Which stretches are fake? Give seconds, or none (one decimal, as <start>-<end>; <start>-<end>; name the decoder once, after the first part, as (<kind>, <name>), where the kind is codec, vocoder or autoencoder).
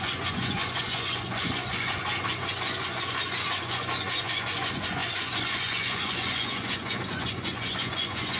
0.0-8.4 (vocoder, Vocos)